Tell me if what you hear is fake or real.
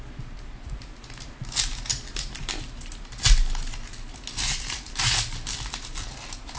real